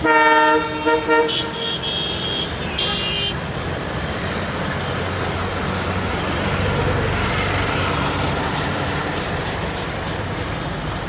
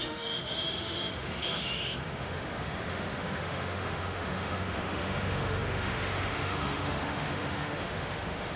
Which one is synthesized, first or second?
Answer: second